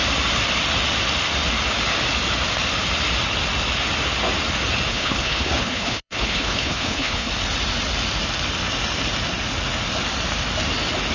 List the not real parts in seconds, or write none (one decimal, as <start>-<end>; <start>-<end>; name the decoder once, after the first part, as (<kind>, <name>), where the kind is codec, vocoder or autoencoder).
4.9-7.3 (codec, HILCodec)